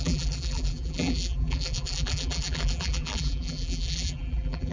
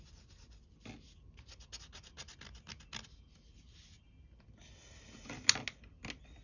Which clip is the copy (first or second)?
first